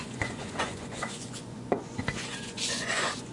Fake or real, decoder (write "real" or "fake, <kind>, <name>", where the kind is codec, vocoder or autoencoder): fake, vocoder, Vocos